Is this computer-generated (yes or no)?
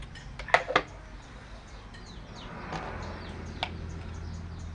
no